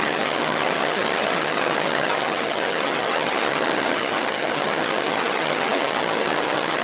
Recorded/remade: remade